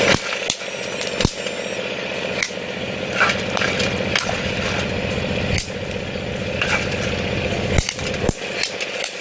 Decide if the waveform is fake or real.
real